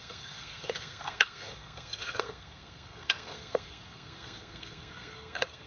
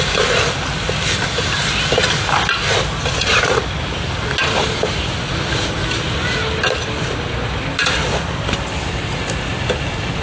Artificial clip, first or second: first